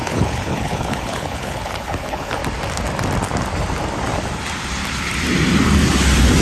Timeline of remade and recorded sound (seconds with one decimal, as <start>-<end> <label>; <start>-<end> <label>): 0.0-2.4 remade; 2.4-6.4 recorded

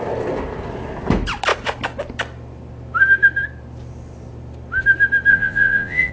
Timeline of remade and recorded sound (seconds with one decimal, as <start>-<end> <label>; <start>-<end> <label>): 0.0-5.3 recorded; 5.3-6.1 remade

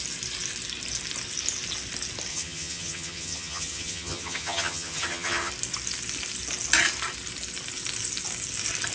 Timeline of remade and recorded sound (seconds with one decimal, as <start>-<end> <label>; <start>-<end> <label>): 0.0-2.3 recorded; 2.3-5.5 remade; 5.5-8.9 recorded

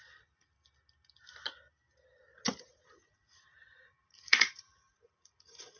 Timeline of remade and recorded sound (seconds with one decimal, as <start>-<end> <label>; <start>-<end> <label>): 0.0-0.5 remade; 0.5-2.7 recorded; 2.7-5.8 remade

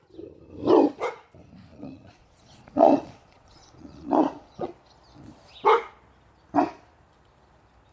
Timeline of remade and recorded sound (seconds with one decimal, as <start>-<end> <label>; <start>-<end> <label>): 0.0-1.7 recorded; 1.7-4.7 remade; 4.7-7.9 recorded

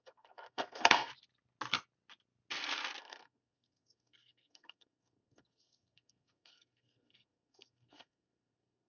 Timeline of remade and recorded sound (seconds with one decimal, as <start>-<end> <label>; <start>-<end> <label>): 0.0-1.1 remade; 1.1-3.0 recorded; 3.0-8.9 remade

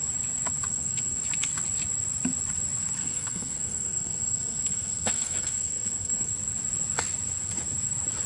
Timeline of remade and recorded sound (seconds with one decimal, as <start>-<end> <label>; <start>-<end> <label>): 0.0-0.7 recorded; 0.7-1.2 remade; 1.2-3.0 recorded; 3.0-6.3 remade; 6.3-8.3 recorded